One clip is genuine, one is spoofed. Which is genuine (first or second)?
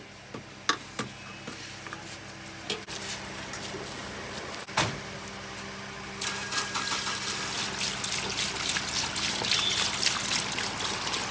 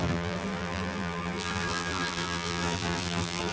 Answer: first